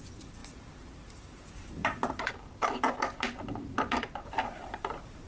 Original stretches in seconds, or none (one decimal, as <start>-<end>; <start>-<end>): 0.0-0.4; 2.3-4.1